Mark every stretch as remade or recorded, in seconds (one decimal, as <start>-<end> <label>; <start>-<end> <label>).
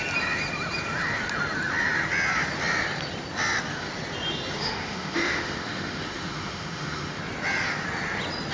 0.0-4.6 recorded; 4.6-7.2 remade; 7.2-8.5 recorded